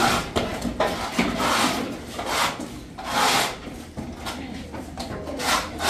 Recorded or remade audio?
recorded